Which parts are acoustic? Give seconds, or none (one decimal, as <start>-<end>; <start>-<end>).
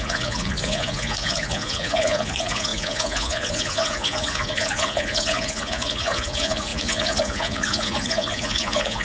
none